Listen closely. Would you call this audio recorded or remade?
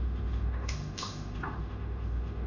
remade